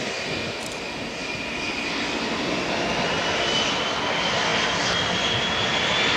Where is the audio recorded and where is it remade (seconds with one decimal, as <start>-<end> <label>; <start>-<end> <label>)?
0.0-6.2 recorded